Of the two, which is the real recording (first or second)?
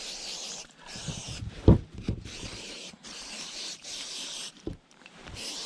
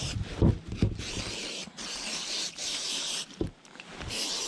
second